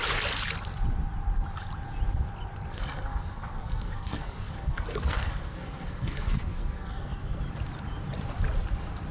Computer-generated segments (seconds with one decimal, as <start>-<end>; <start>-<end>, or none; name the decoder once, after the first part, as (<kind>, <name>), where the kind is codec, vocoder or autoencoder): 2.7-7.4 (codec, SNAC)